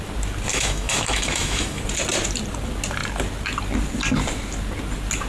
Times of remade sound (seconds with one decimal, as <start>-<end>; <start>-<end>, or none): 0.5-1.8